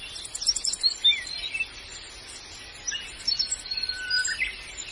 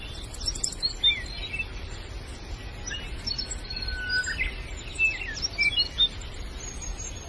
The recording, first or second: second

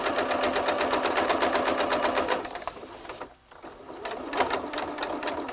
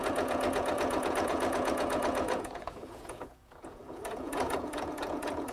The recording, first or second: first